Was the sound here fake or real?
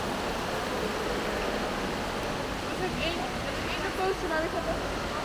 real